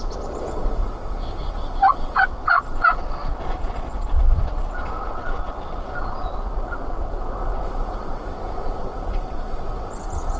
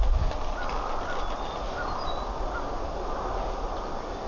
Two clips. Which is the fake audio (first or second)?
first